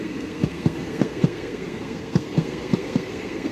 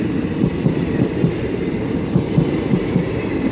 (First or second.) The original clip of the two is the second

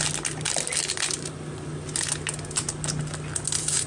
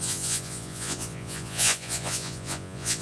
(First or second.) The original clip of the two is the first